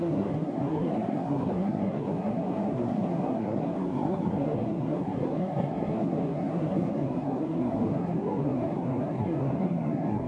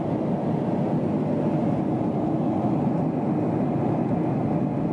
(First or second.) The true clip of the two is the second